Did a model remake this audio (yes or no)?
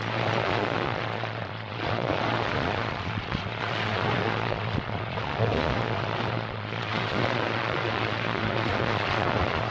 yes